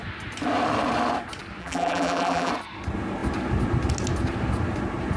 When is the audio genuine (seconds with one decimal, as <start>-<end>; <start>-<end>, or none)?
0.0-1.6; 2.5-5.2